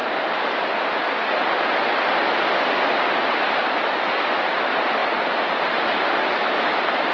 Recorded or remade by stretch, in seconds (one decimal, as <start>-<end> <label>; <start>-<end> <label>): 0.0-7.1 recorded